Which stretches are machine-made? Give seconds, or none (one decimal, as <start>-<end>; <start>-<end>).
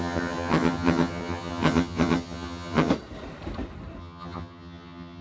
0.0-2.9; 4.0-5.2